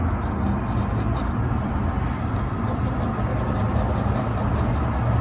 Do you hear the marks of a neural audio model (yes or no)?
no